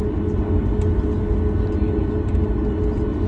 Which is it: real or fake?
real